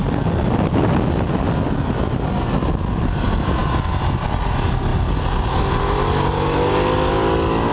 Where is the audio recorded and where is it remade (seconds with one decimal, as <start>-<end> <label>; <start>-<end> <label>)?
0.0-7.7 recorded